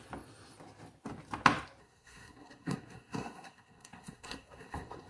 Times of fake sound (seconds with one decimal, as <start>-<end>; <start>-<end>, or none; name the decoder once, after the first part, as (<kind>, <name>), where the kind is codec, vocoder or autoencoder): 1.8-5.1 (codec, SNAC)